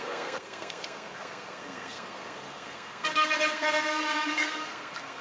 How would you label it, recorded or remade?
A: remade